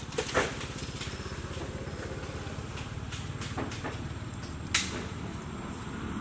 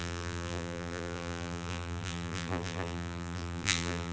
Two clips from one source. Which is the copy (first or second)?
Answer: second